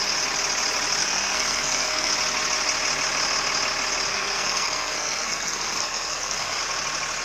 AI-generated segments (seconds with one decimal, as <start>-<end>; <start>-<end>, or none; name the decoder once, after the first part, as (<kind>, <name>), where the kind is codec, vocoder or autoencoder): 1.0-2.1 (codec, SNAC); 4.1-6.6